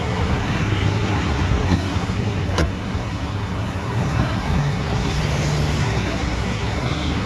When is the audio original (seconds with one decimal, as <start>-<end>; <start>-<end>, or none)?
5.2-5.8